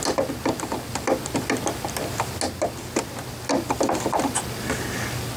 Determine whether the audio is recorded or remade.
recorded